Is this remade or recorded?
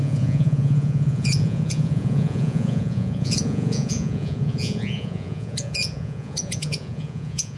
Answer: remade